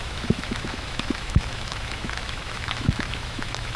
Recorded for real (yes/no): no